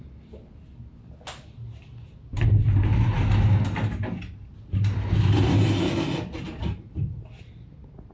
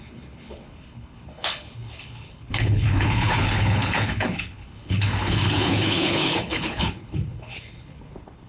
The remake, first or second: second